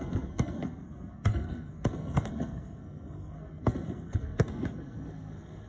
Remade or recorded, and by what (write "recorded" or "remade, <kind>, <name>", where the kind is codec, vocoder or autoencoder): remade, codec, SNAC